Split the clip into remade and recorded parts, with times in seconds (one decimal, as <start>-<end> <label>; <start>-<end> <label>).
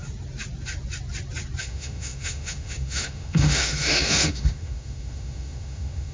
0.0-1.6 recorded; 1.6-6.1 remade